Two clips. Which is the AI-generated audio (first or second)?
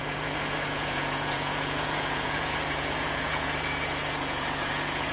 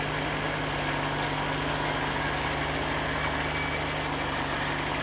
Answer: first